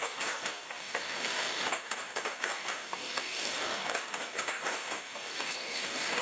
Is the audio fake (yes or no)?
yes